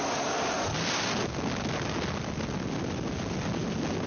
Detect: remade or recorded recorded